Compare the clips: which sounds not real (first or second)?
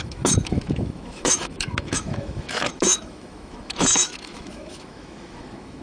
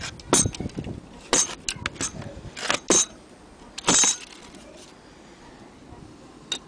first